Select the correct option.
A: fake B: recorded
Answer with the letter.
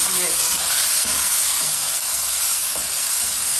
A